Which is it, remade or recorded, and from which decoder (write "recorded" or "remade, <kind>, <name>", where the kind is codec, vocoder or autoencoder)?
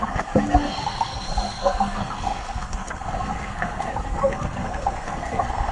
remade, codec, SNAC